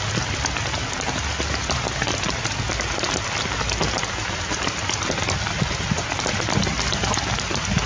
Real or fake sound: real